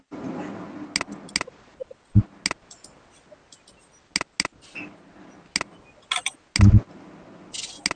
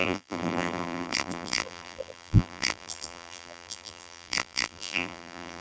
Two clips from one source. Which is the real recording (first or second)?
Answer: first